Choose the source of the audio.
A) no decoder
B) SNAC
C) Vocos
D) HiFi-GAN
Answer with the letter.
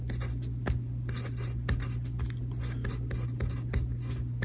A